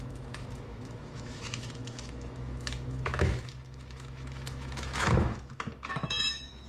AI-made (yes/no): yes